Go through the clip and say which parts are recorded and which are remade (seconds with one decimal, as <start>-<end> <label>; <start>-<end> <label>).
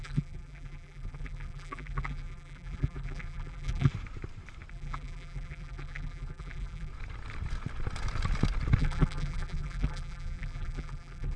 0.0-3.9 remade; 3.9-4.7 recorded; 4.7-6.9 remade; 6.9-8.8 recorded; 8.8-11.4 remade